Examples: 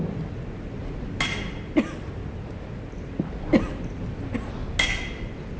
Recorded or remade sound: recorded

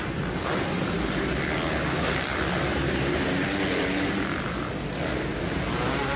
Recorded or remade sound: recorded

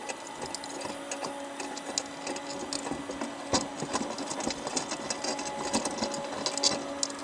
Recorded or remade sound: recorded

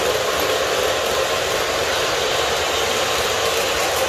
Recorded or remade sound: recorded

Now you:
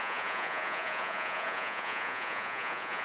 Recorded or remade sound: remade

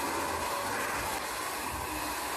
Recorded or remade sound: recorded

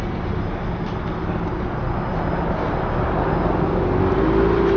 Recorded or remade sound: recorded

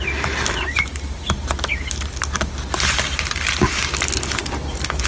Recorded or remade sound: recorded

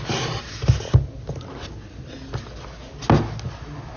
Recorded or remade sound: recorded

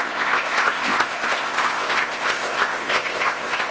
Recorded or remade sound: remade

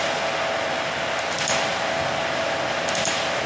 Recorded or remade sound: recorded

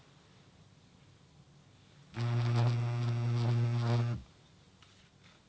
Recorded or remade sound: recorded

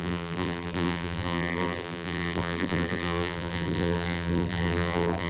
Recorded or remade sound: remade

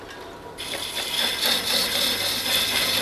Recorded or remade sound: recorded